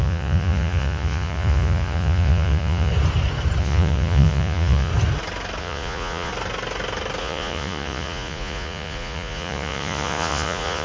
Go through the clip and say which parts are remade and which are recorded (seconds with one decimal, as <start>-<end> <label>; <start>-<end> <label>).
0.0-2.9 remade; 2.9-3.6 recorded; 3.6-4.9 remade; 4.9-5.6 recorded; 5.6-6.3 remade; 6.3-7.2 recorded; 7.2-10.8 remade